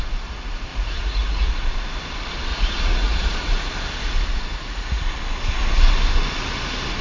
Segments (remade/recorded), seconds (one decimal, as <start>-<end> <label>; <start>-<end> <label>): 0.0-0.7 recorded; 0.7-1.5 remade; 1.5-2.5 recorded; 2.5-3.5 remade; 3.5-4.5 recorded; 4.5-5.0 remade; 5.0-7.0 recorded